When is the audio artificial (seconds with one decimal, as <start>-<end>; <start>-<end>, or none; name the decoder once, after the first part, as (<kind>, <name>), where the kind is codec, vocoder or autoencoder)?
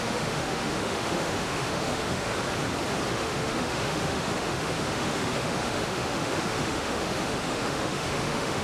0.0-2.3 (autoencoder, DAC-VAE); 3.1-8.6